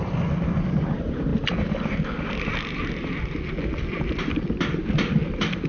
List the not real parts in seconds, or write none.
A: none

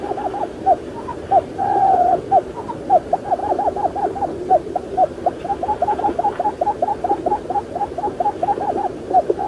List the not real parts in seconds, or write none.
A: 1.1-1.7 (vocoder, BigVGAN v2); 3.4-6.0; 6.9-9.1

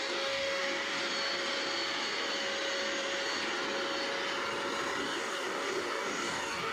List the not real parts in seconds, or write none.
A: 0.0-1.0 (codec, DAC); 5.0-6.7